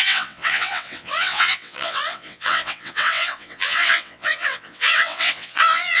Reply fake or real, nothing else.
fake